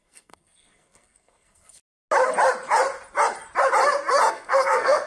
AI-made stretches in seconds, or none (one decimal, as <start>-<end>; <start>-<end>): 0.0-1.8; 4.3-5.1